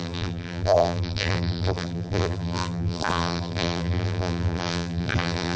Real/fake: fake